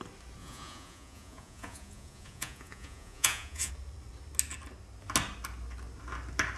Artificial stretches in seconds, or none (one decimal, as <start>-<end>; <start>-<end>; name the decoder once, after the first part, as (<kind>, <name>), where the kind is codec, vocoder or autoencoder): 0.4-3.7 (vocoder, Vocos)